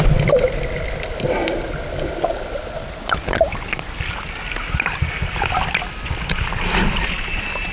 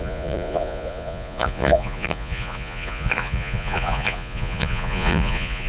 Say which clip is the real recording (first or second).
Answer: first